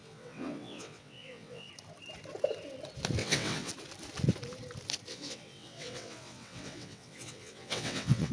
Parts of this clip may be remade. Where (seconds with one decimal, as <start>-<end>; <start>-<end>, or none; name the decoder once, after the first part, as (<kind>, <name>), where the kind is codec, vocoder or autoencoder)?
0.0-1.7 (vocoder, WaveNeXt); 3.2-3.7; 5.1-8.3